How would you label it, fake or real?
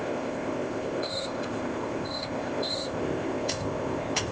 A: fake